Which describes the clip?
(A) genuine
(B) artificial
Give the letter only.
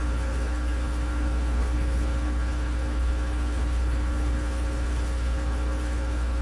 B